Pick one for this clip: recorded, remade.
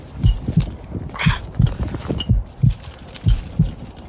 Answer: recorded